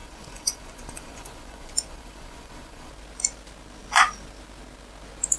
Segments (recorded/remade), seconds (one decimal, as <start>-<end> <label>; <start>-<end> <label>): 0.0-2.9 remade; 2.9-5.4 recorded